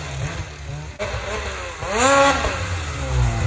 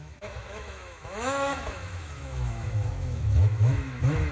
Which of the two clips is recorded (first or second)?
first